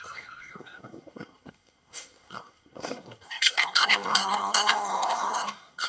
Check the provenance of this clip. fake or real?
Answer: fake